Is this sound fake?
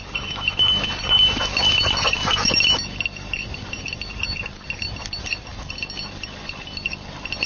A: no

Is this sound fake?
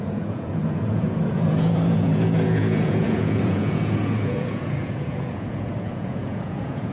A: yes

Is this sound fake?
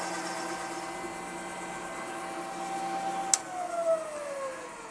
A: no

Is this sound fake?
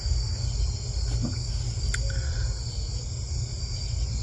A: no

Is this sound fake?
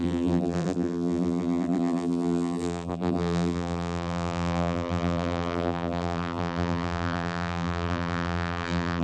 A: yes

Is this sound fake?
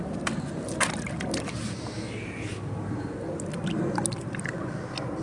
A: no